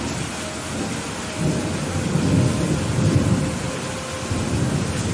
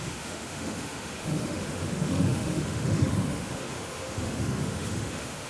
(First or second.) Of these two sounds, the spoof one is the second